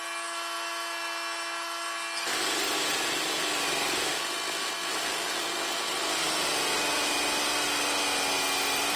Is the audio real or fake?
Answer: real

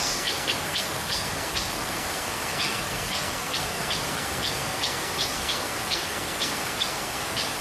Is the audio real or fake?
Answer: fake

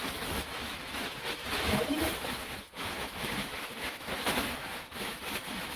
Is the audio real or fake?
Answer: fake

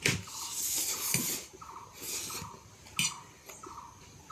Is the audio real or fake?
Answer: real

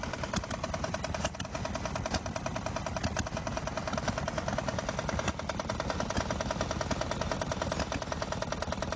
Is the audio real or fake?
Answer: real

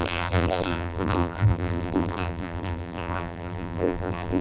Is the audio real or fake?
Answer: fake